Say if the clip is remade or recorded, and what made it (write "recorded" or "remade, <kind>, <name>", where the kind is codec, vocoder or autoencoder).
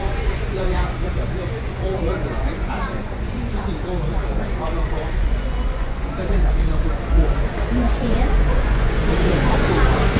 remade, vocoder, Vocos